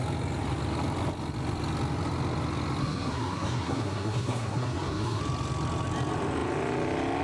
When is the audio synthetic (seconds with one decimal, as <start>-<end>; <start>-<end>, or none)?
2.8-5.2